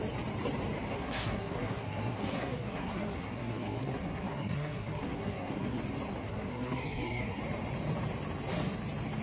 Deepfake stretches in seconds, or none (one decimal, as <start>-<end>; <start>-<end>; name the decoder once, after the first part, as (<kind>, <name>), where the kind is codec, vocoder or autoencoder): 0.9-5.8 (codec, SNAC); 6.2-7.4